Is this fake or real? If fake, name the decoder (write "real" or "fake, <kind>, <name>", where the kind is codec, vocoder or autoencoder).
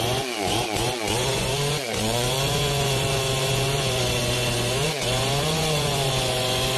fake, vocoder, Vocos